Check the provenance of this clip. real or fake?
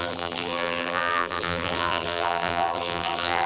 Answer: fake